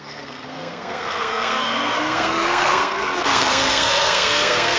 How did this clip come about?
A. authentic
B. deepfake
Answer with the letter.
B